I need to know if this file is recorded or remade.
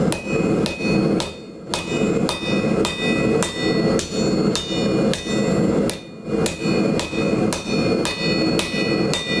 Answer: recorded